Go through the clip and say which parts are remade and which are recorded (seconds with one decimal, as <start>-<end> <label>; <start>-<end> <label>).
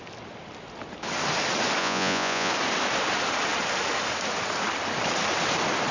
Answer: 0.0-1.8 recorded; 1.8-2.5 remade; 2.5-5.9 recorded